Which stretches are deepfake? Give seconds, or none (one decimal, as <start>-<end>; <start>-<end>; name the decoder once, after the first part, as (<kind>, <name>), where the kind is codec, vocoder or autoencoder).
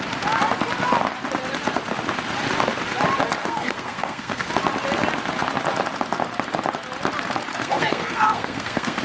3.4-4.5 (codec, SNAC); 7.5-9.0